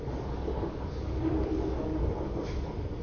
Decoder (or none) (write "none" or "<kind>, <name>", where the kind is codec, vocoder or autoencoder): codec, DAC